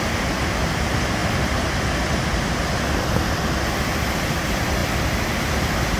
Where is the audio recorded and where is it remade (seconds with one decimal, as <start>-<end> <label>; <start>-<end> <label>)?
0.0-6.0 recorded